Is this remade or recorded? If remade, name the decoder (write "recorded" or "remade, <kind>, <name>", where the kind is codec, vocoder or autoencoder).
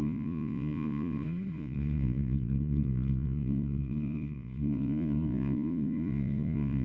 remade, vocoder, Vocos